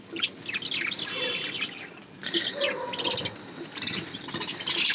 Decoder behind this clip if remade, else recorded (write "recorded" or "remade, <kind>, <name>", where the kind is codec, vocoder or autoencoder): recorded